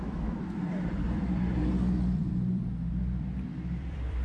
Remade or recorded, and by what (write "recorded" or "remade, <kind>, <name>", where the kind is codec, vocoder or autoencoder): remade, vocoder, BigVGAN v2